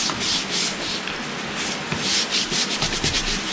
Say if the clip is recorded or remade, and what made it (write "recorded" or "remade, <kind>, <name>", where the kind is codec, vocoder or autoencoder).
recorded